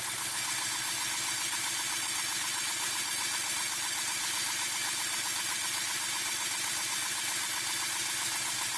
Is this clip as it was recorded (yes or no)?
yes